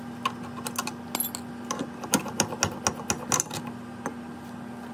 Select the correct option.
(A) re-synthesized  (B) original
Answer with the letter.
B